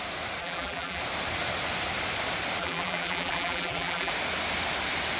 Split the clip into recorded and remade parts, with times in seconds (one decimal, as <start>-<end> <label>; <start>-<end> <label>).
0.0-0.4 recorded; 0.4-1.0 remade; 1.0-2.6 recorded; 2.6-4.1 remade; 4.1-5.2 recorded